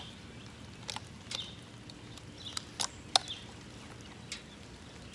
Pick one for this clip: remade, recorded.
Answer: recorded